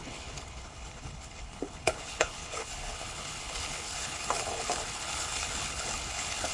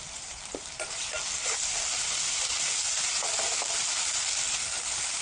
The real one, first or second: second